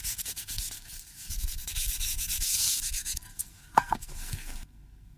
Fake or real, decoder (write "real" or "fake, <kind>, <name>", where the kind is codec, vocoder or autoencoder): fake, codec, SNAC